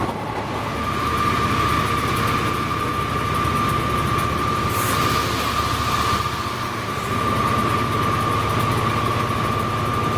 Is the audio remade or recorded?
recorded